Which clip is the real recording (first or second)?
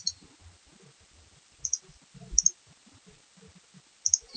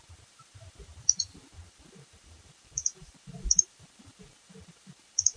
first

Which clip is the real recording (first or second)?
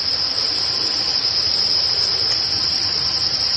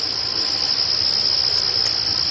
second